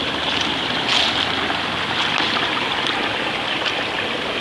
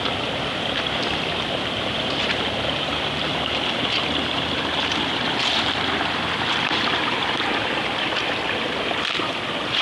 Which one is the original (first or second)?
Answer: first